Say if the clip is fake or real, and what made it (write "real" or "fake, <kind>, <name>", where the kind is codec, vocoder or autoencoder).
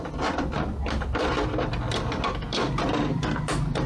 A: fake, vocoder, BigVGAN v2